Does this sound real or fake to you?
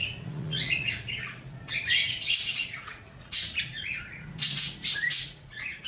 fake